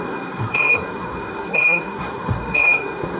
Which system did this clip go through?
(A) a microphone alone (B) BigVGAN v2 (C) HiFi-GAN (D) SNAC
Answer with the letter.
D